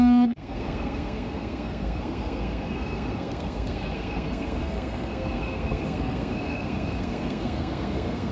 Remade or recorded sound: remade